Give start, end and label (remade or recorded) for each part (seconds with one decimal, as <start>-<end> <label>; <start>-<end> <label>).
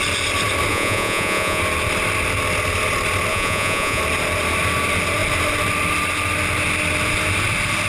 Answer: 0.0-0.7 recorded; 0.7-1.6 remade; 1.6-3.3 recorded; 3.3-4.0 remade; 4.0-7.9 recorded